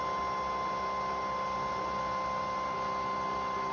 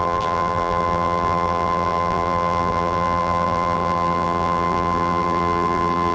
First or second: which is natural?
first